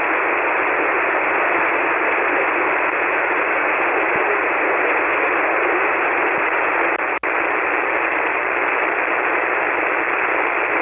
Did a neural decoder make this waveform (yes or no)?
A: no